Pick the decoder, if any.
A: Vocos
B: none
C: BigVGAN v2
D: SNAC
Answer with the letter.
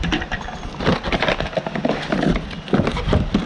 B